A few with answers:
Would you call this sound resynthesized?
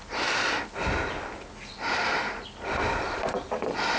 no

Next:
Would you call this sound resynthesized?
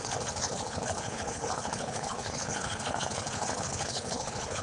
yes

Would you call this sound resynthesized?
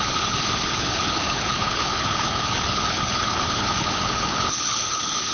yes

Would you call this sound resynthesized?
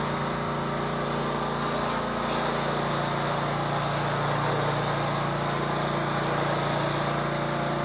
no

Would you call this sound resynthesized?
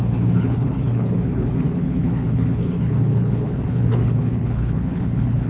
yes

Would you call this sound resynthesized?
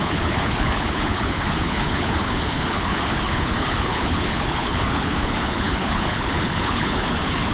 yes